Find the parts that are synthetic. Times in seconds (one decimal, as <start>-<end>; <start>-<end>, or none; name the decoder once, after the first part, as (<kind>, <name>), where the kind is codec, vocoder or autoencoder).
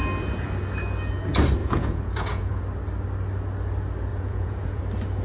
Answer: 1.6-2.6 (vocoder, Vocos); 4.1-4.8